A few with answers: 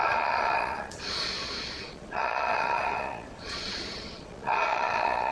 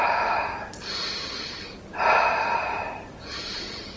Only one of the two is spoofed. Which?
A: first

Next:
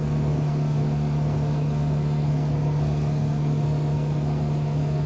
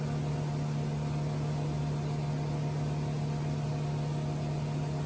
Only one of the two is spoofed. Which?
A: first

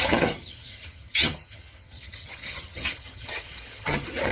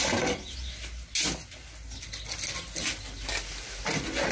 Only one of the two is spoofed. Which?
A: first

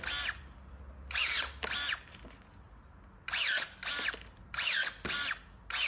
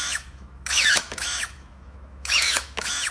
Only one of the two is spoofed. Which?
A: second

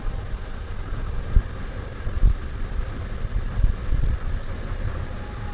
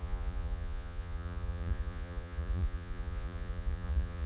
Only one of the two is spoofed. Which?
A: second